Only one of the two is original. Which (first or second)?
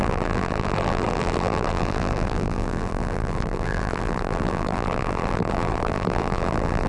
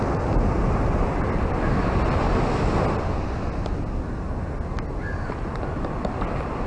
second